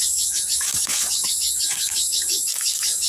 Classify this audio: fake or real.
fake